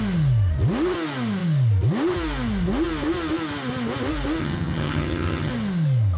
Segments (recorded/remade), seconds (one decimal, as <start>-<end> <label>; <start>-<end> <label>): 0.0-4.4 recorded; 4.4-5.5 remade; 5.5-6.2 recorded